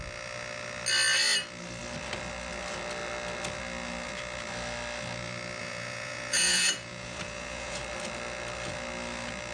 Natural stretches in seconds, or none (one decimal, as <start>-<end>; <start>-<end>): 0.0-5.6; 7.8-9.5